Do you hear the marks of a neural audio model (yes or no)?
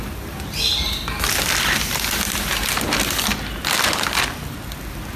no